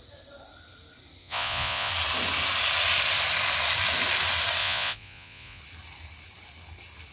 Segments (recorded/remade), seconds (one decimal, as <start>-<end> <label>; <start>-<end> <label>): 0.0-1.2 recorded; 1.2-1.9 remade; 1.9-4.6 recorded; 4.6-5.6 remade; 5.6-7.1 recorded